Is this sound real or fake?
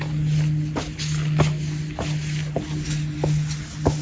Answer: real